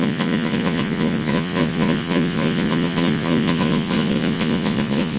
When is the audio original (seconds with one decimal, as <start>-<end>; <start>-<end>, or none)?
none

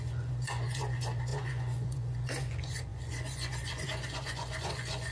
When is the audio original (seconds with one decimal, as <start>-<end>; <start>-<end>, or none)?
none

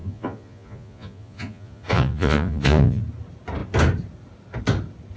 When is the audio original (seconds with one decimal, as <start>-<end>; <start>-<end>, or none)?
3.0-5.2

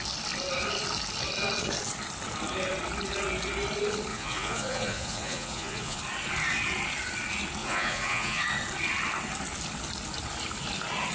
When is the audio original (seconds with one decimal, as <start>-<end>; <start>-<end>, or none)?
0.0-4.1; 6.0-7.6; 8.4-11.1